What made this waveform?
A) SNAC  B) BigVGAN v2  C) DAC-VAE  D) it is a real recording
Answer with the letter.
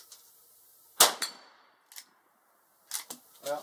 D